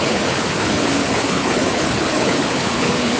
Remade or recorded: remade